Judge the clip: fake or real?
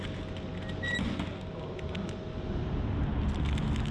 real